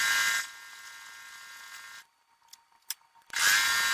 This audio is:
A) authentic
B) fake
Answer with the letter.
A